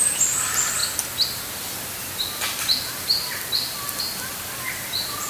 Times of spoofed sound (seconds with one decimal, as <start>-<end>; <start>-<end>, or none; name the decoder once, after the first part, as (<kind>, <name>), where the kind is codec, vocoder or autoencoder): 0.0-5.3 (vocoder, BigVGAN v2)